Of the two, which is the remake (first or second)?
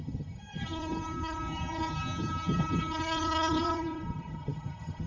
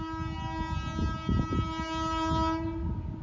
first